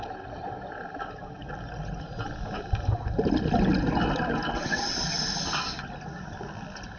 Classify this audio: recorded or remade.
recorded